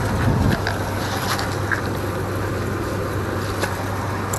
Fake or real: real